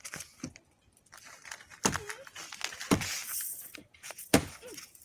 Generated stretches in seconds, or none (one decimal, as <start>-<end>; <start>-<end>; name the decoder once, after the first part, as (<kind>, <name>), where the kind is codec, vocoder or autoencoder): 3.3-4.4 (vocoder, Vocos)